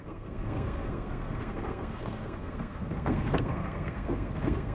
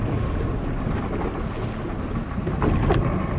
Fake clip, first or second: first